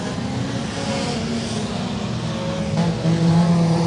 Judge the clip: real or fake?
real